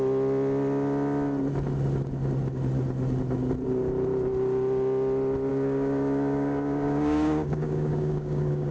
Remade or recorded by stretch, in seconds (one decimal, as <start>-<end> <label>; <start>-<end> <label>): 0.0-5.5 recorded; 5.5-8.7 remade